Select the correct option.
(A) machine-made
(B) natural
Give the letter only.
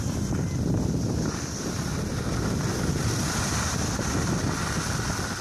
B